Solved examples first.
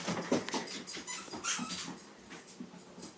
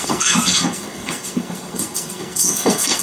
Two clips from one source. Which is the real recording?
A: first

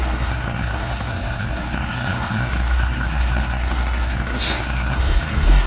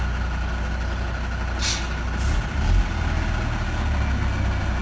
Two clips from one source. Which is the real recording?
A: second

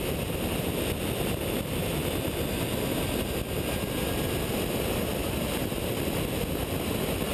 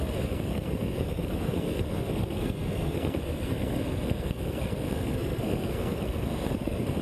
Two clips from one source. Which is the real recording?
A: first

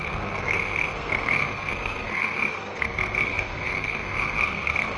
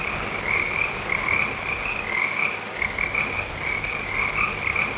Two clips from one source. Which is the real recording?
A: second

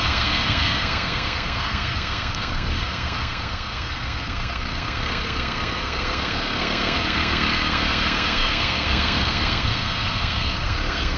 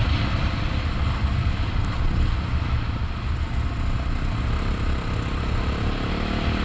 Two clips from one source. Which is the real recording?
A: second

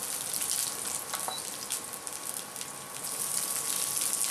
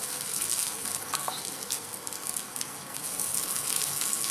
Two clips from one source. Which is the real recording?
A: first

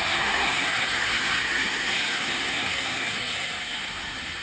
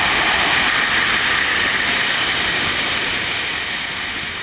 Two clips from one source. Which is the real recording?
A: second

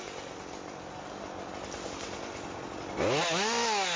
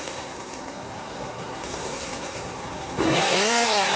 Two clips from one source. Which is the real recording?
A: first